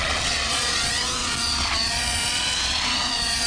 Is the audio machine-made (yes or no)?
yes